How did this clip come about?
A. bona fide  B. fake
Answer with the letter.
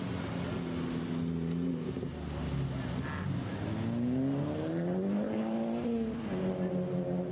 A